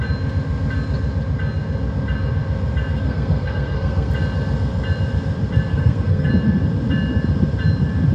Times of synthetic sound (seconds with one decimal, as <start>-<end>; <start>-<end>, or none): 2.9-4.1; 5.7-6.3